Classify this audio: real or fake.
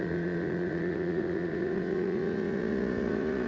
fake